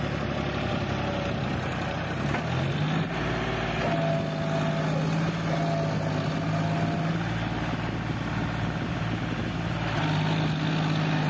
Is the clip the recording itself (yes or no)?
yes